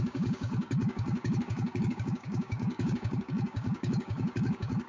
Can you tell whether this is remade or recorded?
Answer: remade